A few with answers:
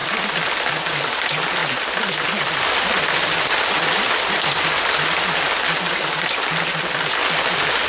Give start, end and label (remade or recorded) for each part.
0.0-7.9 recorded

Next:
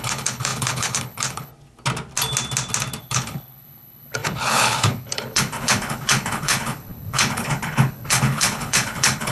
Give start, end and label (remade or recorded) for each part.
0.0-1.5 remade; 1.5-3.0 recorded; 3.0-9.3 remade

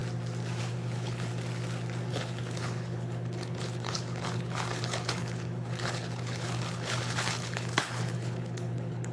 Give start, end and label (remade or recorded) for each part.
0.0-0.6 recorded; 0.6-1.3 remade; 1.3-2.1 recorded; 2.1-9.1 remade

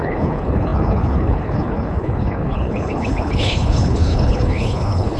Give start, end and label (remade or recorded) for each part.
0.0-5.2 remade

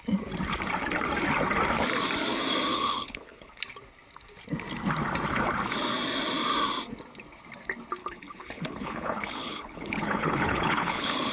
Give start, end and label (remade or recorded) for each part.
0.0-2.7 recorded; 2.7-3.6 remade; 3.6-8.0 recorded; 8.0-11.3 remade